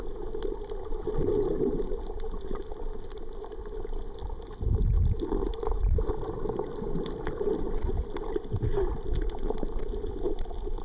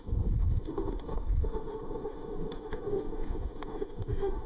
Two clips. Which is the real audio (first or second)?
first